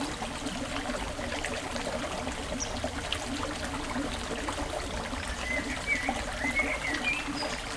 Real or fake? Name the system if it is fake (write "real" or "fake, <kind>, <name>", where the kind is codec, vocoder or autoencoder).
real